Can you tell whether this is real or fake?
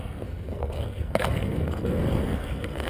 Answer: fake